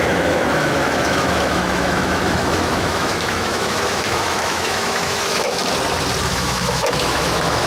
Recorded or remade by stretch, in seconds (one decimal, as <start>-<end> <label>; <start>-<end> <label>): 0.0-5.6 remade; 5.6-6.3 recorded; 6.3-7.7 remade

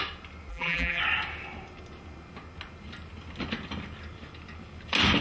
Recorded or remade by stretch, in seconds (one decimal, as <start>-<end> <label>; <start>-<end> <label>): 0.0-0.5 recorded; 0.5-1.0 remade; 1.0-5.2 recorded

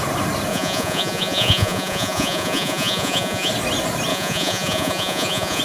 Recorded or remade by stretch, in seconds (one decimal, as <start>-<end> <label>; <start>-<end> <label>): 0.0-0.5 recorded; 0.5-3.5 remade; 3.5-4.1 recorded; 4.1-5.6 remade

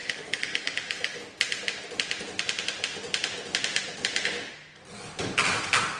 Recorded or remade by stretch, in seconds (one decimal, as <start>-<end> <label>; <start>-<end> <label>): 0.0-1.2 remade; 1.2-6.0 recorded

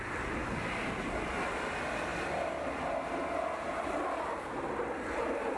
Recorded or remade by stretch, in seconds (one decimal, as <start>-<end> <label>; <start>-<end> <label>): 0.0-5.6 recorded

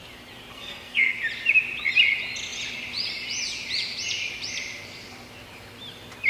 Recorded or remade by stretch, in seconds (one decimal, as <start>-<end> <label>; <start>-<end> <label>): 0.0-0.5 recorded; 0.5-1.2 remade; 1.2-6.3 recorded